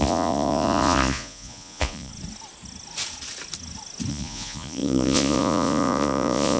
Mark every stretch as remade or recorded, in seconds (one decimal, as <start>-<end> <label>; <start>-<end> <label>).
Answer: 0.0-2.1 remade; 2.1-4.1 recorded; 4.1-6.6 remade